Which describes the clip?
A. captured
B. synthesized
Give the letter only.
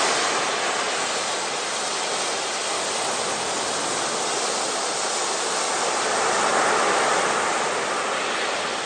A